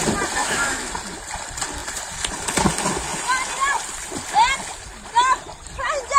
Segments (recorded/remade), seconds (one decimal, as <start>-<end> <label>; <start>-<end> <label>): 0.0-0.4 recorded; 0.4-0.9 remade; 0.9-6.2 recorded